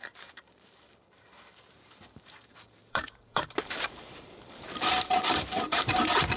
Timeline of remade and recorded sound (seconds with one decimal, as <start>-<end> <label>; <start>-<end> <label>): 0.0-6.4 remade